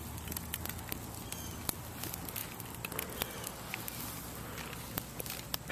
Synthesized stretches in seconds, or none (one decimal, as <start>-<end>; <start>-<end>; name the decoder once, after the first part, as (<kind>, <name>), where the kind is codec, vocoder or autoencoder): none